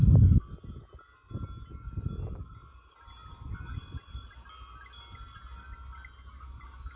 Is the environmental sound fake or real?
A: real